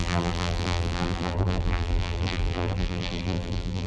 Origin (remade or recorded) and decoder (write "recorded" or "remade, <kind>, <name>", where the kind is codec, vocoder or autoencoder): remade, vocoder, BigVGAN v2